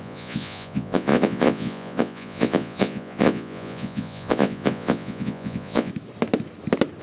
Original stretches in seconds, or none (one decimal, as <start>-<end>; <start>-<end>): 5.9-7.0